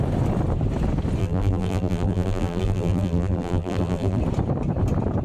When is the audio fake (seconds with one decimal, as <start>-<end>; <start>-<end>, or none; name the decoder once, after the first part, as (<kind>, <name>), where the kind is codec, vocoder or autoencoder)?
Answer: 1.2-4.2 (vocoder, BigVGAN v2)